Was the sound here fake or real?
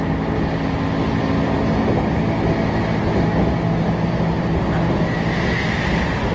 real